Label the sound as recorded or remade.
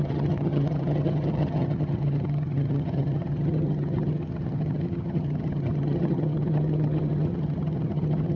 remade